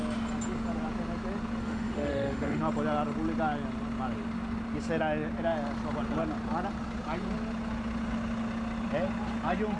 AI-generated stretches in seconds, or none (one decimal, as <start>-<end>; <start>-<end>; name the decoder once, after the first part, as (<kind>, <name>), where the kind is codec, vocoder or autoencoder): 1.6-2.6 (autoencoder, DAC-VAE)